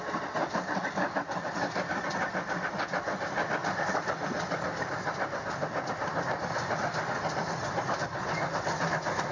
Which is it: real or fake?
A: real